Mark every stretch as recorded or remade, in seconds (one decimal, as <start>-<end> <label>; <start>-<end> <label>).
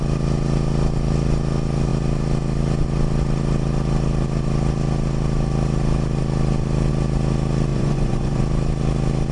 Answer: 0.0-7.7 recorded; 7.7-8.4 remade; 8.4-9.3 recorded